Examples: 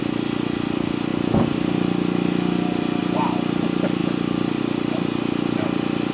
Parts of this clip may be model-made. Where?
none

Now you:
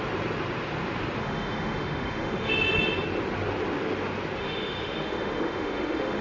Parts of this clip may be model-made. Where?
1.2-2.5 (autoencoder, DAC-VAE); 4.4-6.2